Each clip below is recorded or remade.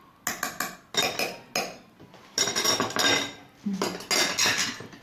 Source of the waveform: recorded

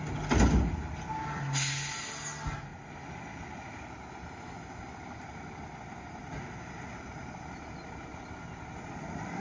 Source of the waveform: recorded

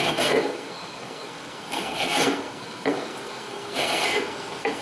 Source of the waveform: remade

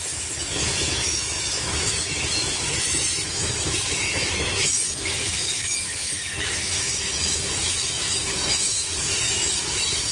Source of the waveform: remade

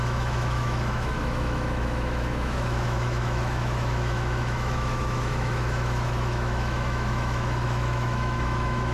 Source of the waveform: remade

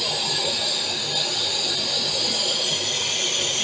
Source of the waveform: recorded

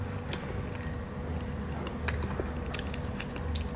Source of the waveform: recorded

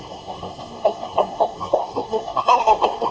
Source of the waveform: remade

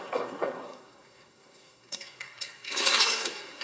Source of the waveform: remade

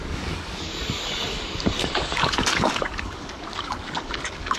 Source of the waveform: remade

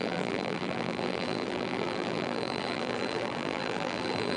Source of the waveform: remade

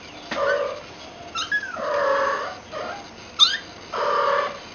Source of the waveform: recorded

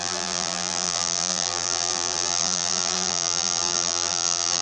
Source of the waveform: remade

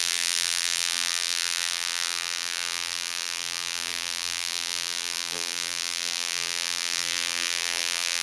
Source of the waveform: remade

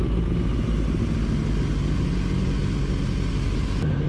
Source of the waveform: recorded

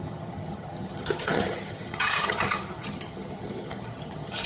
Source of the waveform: remade